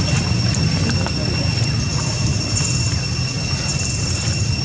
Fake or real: real